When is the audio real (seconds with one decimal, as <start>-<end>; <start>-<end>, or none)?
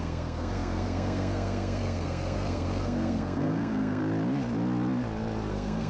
4.0-5.5